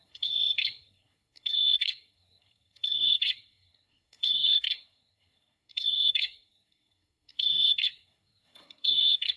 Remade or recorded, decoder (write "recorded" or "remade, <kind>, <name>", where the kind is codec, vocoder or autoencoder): remade, codec, SNAC